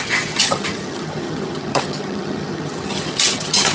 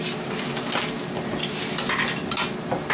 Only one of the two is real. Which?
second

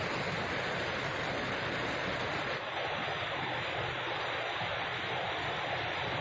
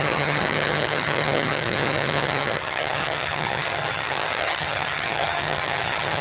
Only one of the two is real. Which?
first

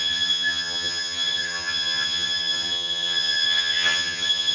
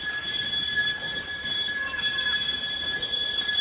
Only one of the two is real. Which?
second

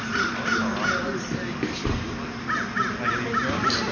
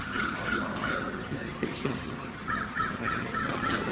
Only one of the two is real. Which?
first